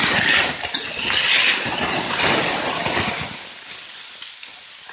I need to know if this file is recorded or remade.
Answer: recorded